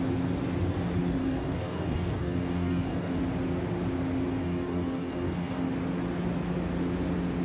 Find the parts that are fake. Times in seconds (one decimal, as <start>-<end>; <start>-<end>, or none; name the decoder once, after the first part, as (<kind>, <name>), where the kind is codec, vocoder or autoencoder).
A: 1.2-3.2 (codec, DAC); 4.4-5.7